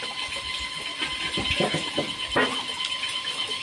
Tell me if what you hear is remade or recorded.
recorded